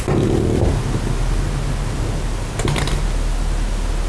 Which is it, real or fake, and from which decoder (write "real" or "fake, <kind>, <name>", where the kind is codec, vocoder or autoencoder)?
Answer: real